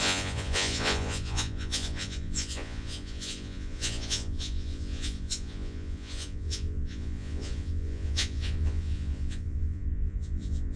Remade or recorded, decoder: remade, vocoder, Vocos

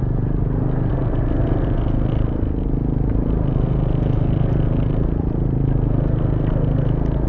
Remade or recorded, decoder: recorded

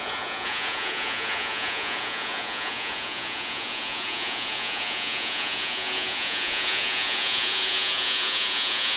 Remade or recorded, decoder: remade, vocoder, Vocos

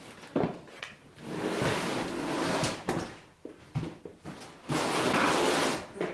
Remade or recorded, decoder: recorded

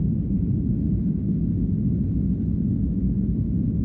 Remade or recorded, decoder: recorded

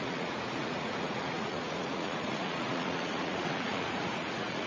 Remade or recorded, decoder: remade, vocoder, Vocos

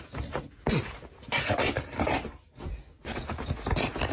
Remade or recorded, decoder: recorded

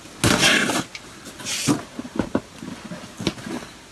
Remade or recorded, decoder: recorded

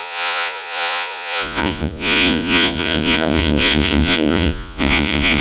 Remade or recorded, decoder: remade, vocoder, Vocos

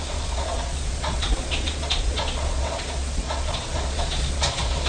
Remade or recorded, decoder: remade, vocoder, Vocos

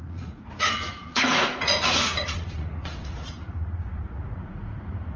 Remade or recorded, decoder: remade, vocoder, Vocos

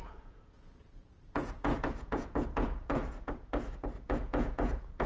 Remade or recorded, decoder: remade, vocoder, Vocos